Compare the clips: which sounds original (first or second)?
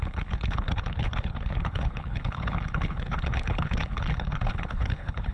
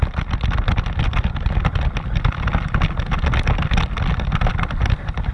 second